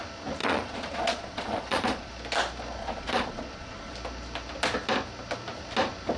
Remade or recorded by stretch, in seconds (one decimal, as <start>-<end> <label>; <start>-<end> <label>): 0.0-0.4 recorded; 0.4-2.1 remade; 2.1-2.8 recorded; 2.8-3.9 remade; 3.9-6.2 recorded